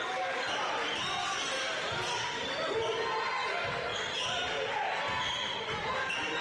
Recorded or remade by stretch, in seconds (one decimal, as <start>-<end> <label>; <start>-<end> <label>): 0.0-6.4 recorded

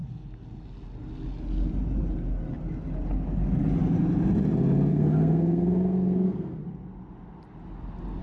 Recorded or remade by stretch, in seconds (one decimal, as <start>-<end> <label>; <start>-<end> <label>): 0.0-4.9 recorded; 4.9-6.6 remade; 6.6-8.2 recorded

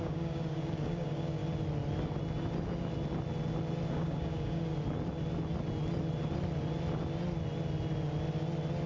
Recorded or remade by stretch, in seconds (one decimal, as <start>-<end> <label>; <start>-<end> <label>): 0.0-1.4 remade; 1.4-3.9 recorded; 3.9-4.7 remade; 4.7-8.9 recorded

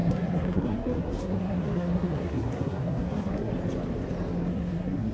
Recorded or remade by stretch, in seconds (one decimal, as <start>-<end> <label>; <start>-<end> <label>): 0.0-3.5 remade; 3.5-4.5 recorded; 4.5-5.1 remade